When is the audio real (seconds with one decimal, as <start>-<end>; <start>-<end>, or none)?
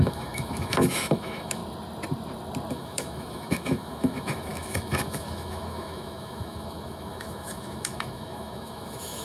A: 1.6-2.7